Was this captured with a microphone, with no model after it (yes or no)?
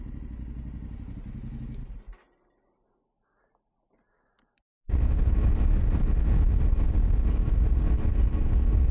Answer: yes